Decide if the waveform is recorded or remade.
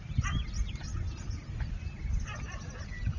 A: recorded